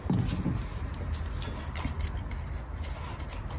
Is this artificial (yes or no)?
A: no